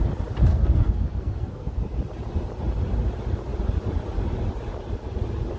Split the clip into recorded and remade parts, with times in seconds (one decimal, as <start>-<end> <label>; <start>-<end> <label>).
0.0-0.5 recorded; 0.5-1.8 remade; 1.8-5.6 recorded